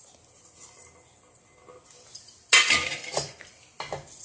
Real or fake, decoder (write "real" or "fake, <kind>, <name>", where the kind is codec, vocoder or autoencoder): real